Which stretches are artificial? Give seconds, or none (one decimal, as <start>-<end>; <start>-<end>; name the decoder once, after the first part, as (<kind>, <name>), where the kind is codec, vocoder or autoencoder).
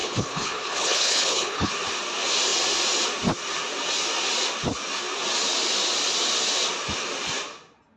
0.0-1.7 (codec, HILCodec)